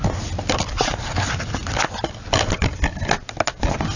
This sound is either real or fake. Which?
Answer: real